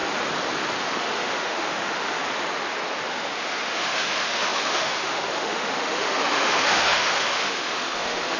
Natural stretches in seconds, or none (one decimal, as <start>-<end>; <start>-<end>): 0.0-0.8; 2.2-3.1